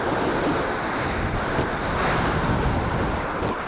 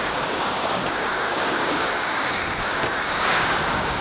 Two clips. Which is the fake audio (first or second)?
second